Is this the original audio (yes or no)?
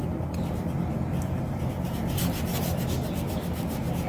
yes